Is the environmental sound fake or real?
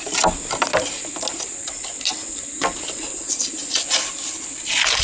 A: real